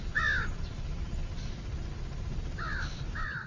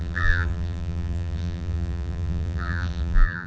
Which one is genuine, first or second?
first